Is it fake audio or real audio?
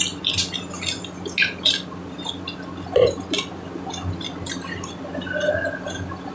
real